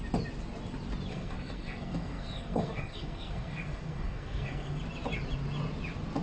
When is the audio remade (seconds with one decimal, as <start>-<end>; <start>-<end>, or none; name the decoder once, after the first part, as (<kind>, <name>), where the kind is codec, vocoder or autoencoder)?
1.1-4.8 (codec, SNAC)